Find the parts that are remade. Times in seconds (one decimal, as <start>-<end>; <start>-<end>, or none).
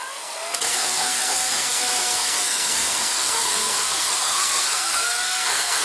0.0-5.8